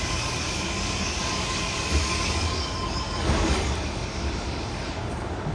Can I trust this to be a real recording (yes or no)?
no